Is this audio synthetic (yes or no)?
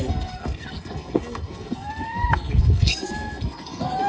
yes